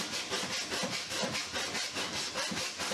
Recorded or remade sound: recorded